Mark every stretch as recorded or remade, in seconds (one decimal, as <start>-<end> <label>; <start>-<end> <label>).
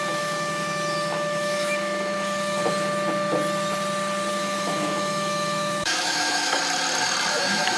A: 0.0-2.6 remade; 2.6-4.3 recorded; 4.3-6.6 remade; 6.6-7.3 recorded; 7.3-7.8 remade